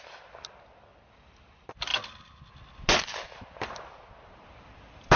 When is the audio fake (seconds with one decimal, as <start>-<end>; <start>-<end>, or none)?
none